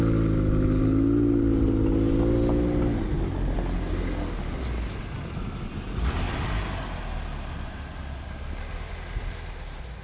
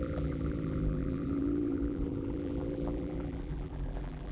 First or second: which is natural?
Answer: first